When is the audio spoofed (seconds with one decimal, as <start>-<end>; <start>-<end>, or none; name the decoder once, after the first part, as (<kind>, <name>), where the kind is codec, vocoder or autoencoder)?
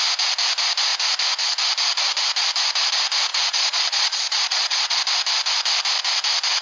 3.3-5.0 (vocoder, Vocos)